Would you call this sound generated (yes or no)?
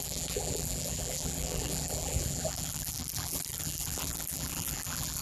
yes